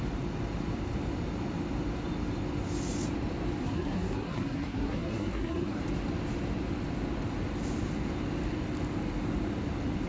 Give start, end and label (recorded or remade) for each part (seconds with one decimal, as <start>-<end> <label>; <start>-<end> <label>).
0.0-3.6 recorded; 3.6-5.8 remade; 5.8-10.1 recorded